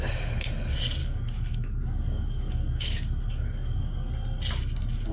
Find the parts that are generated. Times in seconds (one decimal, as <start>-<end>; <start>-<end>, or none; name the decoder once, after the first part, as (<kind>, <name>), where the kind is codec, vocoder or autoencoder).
1.0-4.1 (codec, DAC)